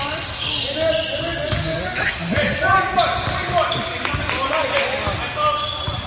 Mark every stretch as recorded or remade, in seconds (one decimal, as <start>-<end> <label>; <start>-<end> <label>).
0.0-6.1 recorded